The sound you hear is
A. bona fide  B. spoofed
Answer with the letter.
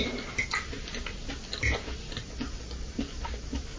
A